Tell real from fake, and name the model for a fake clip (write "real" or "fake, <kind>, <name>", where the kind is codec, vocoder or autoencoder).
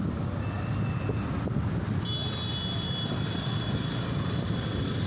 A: real